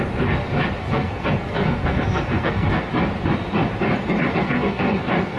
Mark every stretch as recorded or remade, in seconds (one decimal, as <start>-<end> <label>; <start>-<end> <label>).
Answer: 0.0-0.8 recorded; 0.8-2.9 remade; 2.9-4.3 recorded; 4.3-5.4 remade